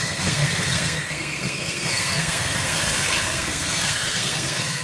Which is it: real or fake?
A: fake